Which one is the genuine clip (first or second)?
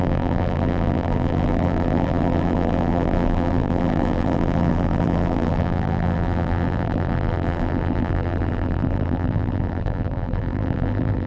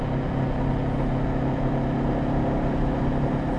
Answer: second